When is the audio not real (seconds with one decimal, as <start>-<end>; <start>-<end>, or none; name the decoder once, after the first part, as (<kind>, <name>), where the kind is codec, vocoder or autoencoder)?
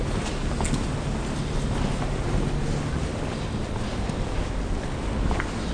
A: none